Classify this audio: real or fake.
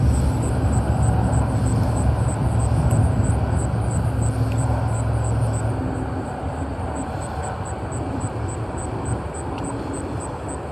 real